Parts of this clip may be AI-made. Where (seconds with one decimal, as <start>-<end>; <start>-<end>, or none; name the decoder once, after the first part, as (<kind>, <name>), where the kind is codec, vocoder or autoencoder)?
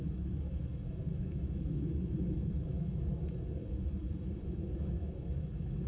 0.0-5.9 (autoencoder, DAC-VAE)